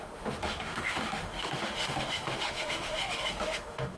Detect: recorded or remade remade